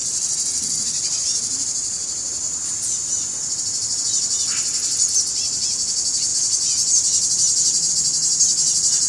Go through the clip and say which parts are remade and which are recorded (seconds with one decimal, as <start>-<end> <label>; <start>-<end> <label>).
0.0-4.0 remade; 4.0-9.1 recorded